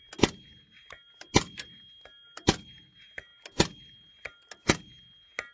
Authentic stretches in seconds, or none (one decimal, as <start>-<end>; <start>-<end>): 0.0-5.5

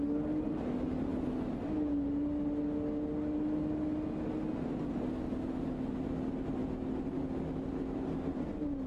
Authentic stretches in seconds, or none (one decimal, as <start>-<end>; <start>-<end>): 0.0-8.9

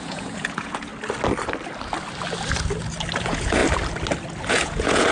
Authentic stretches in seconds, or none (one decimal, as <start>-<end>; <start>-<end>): 0.9-3.2; 3.6-4.5

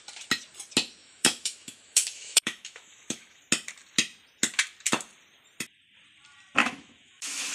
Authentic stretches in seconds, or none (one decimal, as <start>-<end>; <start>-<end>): 0.0-1.0; 3.4-6.6

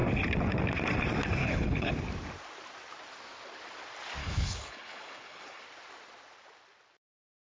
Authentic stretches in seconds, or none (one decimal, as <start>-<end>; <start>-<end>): 0.0-1.4; 1.9-4.2; 5.6-7.4

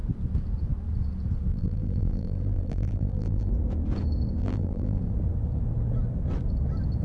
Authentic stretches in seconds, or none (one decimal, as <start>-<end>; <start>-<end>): 0.0-1.5; 3.5-4.4; 5.0-7.0